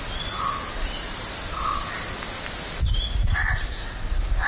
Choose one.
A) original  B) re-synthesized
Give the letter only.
A